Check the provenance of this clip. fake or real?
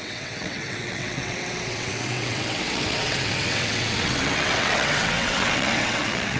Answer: fake